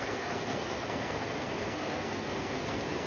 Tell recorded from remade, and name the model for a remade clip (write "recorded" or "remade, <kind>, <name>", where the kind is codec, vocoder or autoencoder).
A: remade, codec, SNAC